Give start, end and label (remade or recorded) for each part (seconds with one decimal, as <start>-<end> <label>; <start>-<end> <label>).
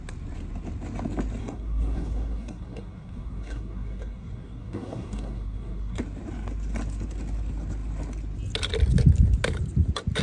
0.0-1.4 recorded; 1.4-6.0 remade; 6.0-10.2 recorded